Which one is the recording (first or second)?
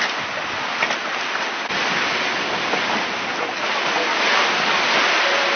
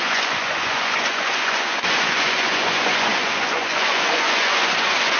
first